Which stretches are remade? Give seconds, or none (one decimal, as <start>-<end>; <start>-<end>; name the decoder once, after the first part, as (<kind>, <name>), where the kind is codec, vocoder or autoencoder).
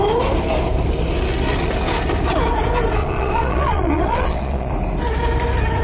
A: 3.0-4.7 (vocoder, Vocos)